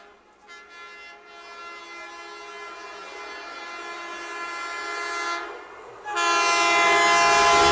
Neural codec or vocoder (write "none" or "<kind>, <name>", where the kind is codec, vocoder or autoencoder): none